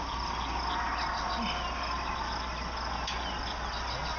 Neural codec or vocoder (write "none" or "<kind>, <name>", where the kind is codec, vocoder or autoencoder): none